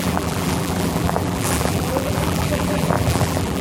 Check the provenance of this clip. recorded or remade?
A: remade